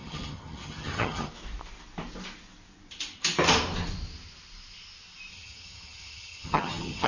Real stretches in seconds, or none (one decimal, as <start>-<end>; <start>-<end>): 1.3-5.3